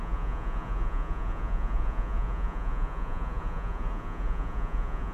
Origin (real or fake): fake